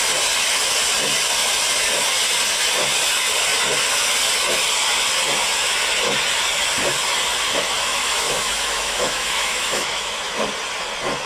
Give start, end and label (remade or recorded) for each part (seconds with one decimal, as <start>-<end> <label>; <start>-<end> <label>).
0.0-7.8 recorded; 7.8-10.5 remade; 10.5-11.3 recorded